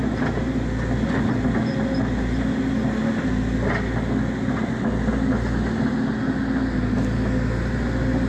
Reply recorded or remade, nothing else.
recorded